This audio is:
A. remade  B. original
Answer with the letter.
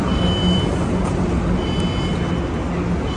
B